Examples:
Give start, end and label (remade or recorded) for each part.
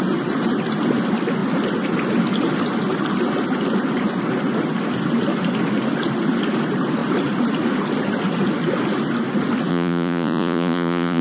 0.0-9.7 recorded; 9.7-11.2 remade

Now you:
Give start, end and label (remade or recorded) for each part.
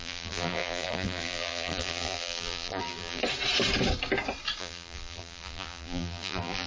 0.0-3.2 remade; 3.2-4.6 recorded; 4.6-6.7 remade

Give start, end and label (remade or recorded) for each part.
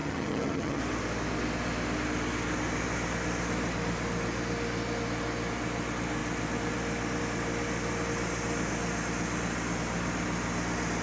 0.0-0.8 remade; 0.8-11.0 recorded